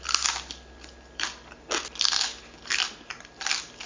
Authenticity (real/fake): real